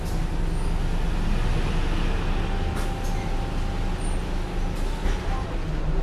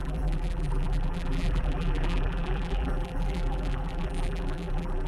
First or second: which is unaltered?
first